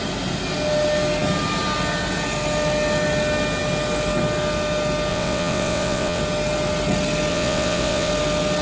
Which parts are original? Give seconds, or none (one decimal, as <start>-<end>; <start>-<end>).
0.0-5.1; 6.2-7.3; 8.1-8.6